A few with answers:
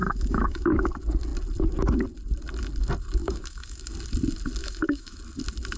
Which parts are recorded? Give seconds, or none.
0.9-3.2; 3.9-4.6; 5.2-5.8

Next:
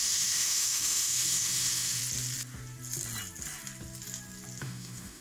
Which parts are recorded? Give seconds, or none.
2.0-4.6